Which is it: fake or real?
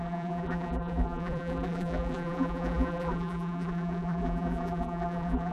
fake